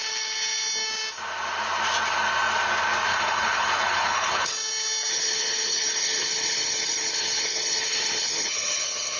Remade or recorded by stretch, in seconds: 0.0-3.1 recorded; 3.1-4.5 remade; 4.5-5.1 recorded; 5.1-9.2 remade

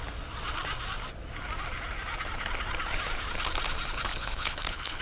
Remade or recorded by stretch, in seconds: 0.0-4.1 recorded; 4.1-5.0 remade

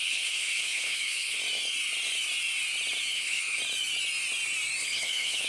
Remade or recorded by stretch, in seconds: 0.0-1.4 remade; 1.4-3.1 recorded; 3.1-3.6 remade; 3.6-4.8 recorded; 4.8-5.5 remade

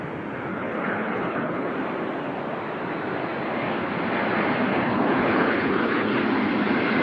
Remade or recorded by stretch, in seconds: 0.0-0.5 recorded; 0.5-1.7 remade; 1.7-4.7 recorded; 4.7-6.2 remade; 6.2-7.0 recorded